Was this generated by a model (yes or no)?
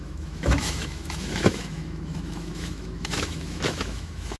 yes